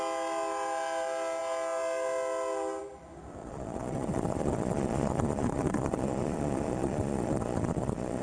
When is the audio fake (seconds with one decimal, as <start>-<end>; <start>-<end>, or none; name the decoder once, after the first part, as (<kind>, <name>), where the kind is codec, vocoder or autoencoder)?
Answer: 3.4-8.2 (vocoder, Vocos)